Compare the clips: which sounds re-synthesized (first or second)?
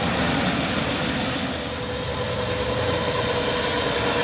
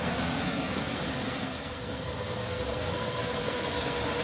second